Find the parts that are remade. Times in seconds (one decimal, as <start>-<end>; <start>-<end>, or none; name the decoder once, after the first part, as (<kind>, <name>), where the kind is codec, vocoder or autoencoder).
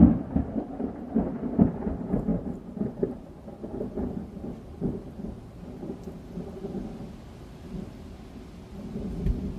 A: none